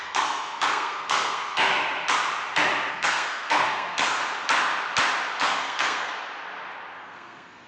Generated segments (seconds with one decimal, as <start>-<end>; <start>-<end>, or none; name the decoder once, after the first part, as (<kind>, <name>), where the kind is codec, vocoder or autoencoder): 0.0-1.7 (codec, SNAC); 2.9-4.2; 5.4-6.1; 7.0-7.7

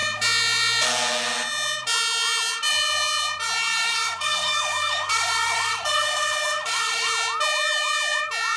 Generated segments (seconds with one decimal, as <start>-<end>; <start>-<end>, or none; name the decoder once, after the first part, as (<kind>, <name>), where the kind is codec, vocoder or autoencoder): 3.8-7.1 (codec, DAC)

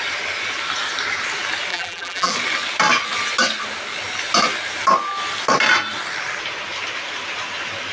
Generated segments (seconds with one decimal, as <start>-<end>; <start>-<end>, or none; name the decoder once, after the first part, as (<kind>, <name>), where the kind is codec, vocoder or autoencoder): 1.7-2.3 (vocoder, BigVGAN v2)

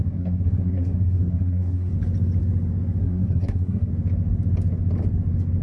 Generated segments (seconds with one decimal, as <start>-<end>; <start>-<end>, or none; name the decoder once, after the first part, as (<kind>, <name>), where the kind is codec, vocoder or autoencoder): 0.0-1.9 (codec, SNAC); 3.0-3.9

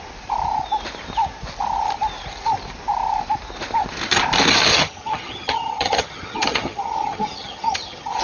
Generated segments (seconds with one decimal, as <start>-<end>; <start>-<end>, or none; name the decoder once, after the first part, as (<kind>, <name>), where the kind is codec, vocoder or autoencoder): 4.7-8.2 (vocoder, HiFi-GAN)